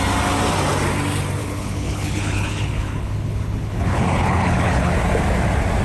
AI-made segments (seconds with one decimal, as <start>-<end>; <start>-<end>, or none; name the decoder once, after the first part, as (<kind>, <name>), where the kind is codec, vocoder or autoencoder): 1.4-4.9 (codec, HILCodec)